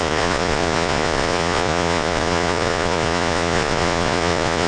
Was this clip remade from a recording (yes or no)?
yes